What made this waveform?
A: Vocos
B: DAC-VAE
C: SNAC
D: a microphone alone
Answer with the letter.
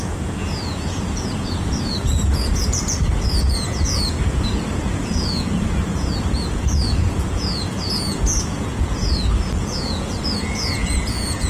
A